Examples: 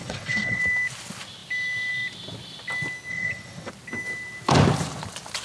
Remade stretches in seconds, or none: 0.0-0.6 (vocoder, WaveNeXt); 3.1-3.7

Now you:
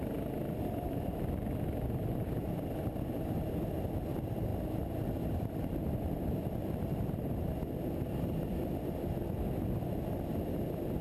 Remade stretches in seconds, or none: none

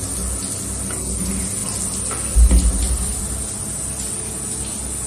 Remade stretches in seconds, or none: none

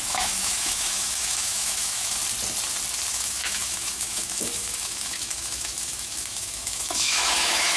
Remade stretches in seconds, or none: 0.0-2.2 (autoencoder, DAC-VAE); 3.1-7.8

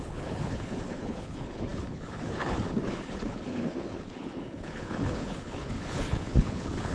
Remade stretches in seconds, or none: 0.0-6.9 (codec, HILCodec)

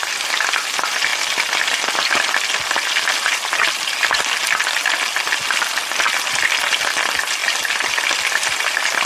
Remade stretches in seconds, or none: none

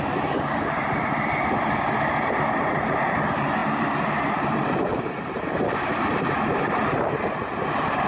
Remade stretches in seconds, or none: 0.0-8.1 (vocoder, BigVGAN v2)

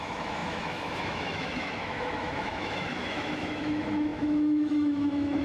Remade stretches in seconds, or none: 0.0-5.4 (autoencoder, DAC-VAE)